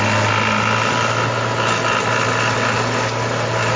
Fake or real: real